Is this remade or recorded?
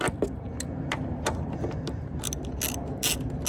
recorded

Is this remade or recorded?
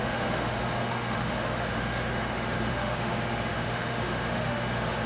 remade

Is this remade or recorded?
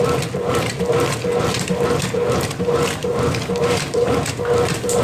recorded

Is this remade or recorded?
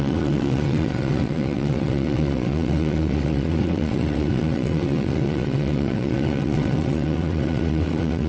remade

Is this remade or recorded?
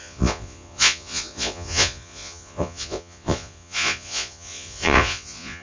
remade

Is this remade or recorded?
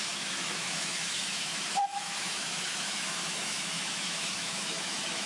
remade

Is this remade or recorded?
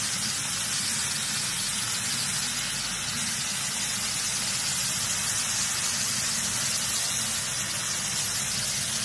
recorded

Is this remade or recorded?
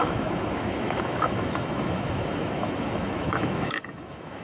remade